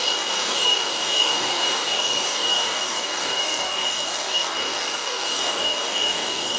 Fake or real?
fake